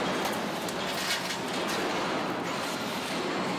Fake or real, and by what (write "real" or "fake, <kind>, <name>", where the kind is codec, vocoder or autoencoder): real